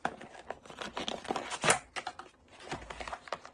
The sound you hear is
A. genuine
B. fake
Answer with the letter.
A